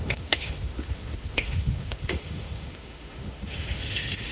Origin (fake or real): fake